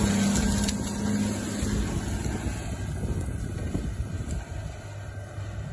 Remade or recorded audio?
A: recorded